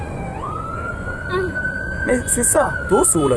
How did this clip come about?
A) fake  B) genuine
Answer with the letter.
A